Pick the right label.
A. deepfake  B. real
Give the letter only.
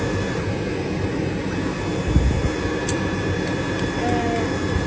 B